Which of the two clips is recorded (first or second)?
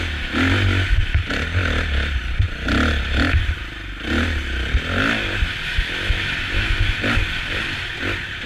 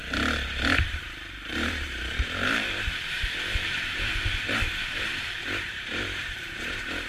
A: first